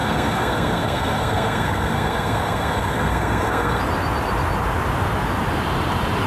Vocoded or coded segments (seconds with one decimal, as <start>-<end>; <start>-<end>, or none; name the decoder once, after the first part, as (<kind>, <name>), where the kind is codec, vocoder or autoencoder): 0.0-3.8 (codec, SNAC)